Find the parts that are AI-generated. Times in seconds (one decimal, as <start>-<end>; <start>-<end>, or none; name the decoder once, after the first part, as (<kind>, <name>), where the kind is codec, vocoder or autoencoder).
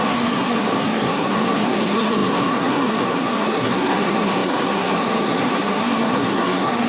0.0-6.9 (codec, SNAC)